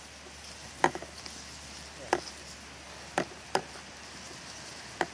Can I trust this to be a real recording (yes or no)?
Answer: yes